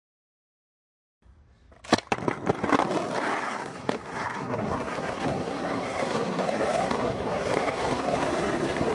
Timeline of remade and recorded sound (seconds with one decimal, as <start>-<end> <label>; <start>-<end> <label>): 0.0-3.4 recorded; 3.4-8.9 remade